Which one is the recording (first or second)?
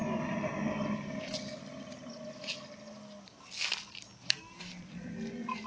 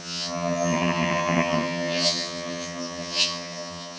first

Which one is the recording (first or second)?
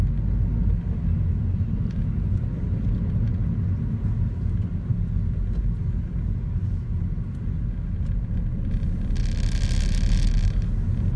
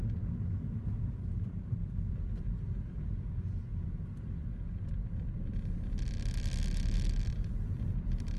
first